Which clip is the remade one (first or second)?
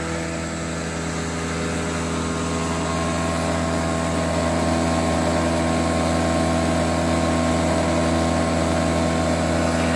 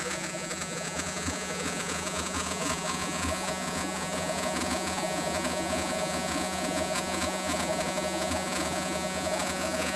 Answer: second